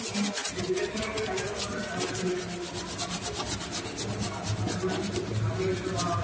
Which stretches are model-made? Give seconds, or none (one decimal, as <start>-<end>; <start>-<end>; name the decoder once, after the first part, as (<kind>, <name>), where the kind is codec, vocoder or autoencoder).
none